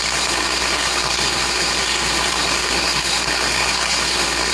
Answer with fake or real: fake